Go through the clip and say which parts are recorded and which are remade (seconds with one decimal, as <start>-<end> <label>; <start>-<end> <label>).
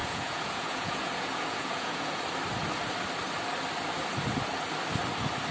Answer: 0.0-2.2 remade; 2.2-5.5 recorded